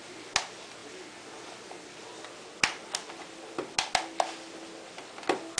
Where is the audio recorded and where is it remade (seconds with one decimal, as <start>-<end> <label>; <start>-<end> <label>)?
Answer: 0.0-5.6 recorded